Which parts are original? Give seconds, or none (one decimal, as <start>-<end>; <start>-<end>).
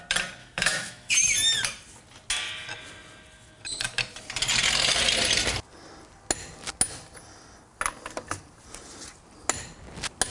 0.0-0.4; 1.1-10.3